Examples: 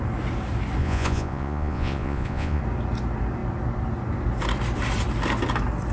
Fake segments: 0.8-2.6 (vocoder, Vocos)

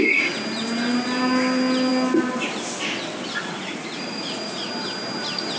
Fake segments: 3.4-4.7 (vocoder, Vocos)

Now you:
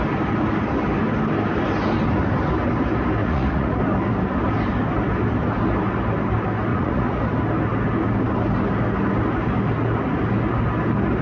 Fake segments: 3.2-3.8 (vocoder, Vocos); 6.7-7.2